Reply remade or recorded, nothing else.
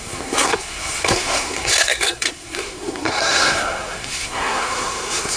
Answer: remade